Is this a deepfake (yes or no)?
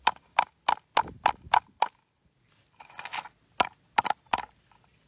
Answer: no